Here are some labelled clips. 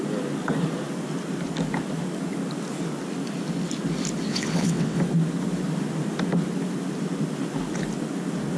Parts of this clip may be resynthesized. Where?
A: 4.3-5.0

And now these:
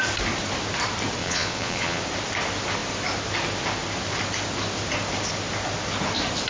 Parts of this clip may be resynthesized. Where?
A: 1.2-2.0

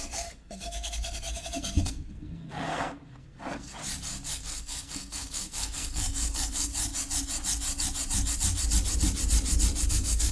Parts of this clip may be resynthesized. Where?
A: 0.0-3.8; 4.3-6.7; 9.9-10.3